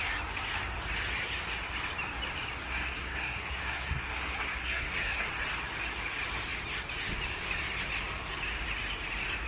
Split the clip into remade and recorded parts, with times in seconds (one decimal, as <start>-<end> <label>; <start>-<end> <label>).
0.0-2.6 recorded; 2.6-5.3 remade; 5.3-9.5 recorded